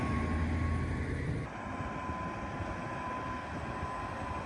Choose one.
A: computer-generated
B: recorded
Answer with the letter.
B